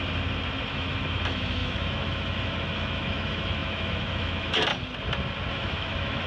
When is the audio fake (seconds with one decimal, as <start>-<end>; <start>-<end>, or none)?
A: 0.7-4.7; 5.5-6.3